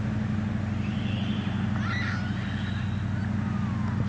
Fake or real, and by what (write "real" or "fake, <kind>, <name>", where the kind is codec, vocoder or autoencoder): real